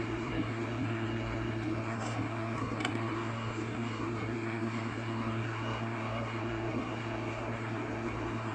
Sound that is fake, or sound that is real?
fake